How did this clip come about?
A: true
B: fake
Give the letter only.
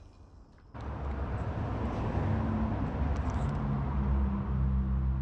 A